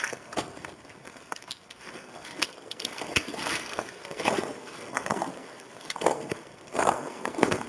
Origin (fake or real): fake